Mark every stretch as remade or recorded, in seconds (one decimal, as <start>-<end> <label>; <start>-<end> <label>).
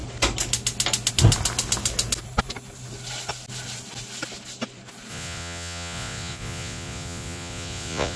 0.0-5.1 recorded; 5.1-8.2 remade